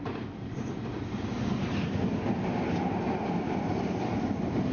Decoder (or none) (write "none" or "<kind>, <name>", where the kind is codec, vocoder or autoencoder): none